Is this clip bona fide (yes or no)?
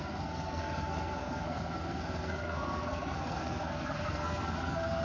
no